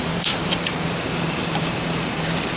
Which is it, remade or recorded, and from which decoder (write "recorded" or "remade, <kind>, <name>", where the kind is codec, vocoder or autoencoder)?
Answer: remade, vocoder, BigVGAN v2